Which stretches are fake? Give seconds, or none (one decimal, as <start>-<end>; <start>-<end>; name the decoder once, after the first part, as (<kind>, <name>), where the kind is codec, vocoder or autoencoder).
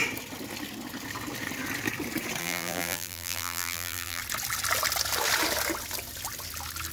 2.4-4.2 (vocoder, BigVGAN v2)